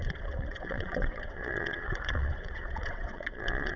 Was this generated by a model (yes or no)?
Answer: yes